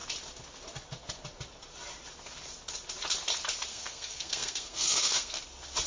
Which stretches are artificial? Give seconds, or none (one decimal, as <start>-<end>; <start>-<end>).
3.7-5.4